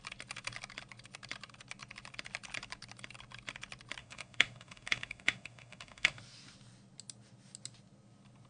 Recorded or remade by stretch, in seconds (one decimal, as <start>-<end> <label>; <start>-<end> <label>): 0.0-4.0 recorded; 4.0-6.2 remade; 6.2-8.5 recorded